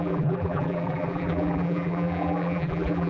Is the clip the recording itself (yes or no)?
no